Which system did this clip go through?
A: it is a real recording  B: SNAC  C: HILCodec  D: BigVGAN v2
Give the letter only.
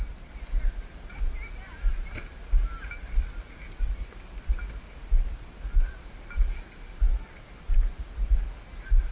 A